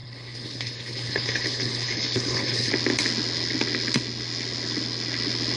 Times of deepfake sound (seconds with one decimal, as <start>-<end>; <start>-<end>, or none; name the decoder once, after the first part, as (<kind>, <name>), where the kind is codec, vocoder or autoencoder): 0.0-2.7 (codec, HILCodec)